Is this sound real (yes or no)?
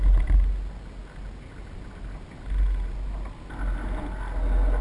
yes